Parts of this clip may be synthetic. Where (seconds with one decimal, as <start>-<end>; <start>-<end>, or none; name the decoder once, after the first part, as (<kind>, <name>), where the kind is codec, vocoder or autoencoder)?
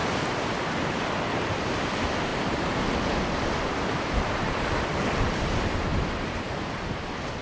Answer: 0.8-7.4 (vocoder, BigVGAN v2)